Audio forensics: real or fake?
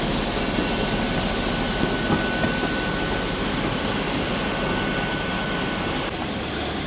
real